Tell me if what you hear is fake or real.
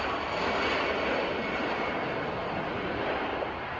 real